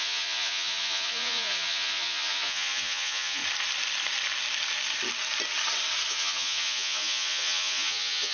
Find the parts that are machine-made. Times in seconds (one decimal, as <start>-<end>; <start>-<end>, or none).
0.0-3.4; 6.1-8.3